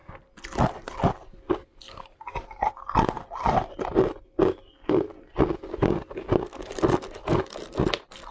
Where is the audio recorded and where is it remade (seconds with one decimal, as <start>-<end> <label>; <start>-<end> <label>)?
0.0-8.3 recorded

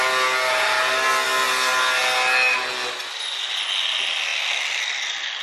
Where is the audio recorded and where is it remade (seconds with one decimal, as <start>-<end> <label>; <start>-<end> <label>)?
0.0-5.4 recorded

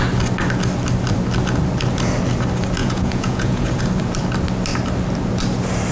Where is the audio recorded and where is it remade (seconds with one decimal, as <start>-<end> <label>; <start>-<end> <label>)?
0.0-2.8 recorded; 2.8-3.8 remade; 3.8-5.9 recorded

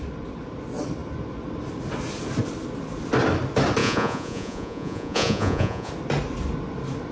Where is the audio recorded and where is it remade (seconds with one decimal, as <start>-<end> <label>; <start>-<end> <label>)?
0.0-3.8 recorded; 3.8-5.9 remade; 5.9-7.1 recorded

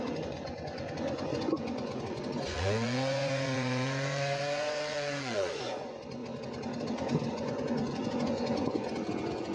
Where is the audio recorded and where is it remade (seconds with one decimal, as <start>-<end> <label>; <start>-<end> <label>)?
0.0-6.2 remade; 6.2-7.3 recorded; 7.3-9.5 remade